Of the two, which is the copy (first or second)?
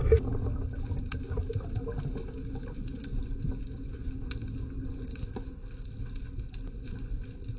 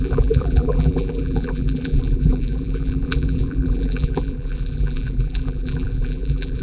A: second